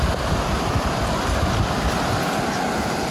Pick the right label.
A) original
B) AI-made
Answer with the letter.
A